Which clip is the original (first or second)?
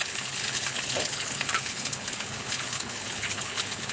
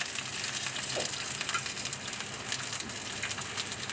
second